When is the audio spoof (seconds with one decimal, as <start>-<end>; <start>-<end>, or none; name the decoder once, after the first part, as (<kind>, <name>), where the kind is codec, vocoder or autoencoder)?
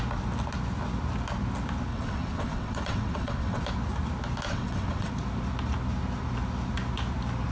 1.9-3.6 (vocoder, WaveNeXt); 4.5-5.1